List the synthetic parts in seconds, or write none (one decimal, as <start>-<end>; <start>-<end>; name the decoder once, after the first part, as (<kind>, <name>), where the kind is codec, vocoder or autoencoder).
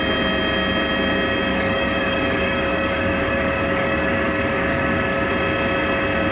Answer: 1.5-5.3 (codec, DAC)